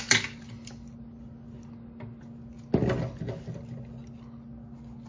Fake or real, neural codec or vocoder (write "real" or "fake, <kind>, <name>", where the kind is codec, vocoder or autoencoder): real